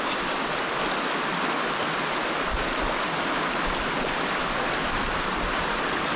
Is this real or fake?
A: real